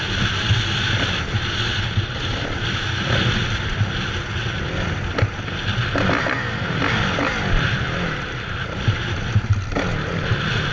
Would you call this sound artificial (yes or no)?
no